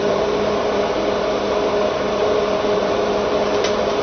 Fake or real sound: fake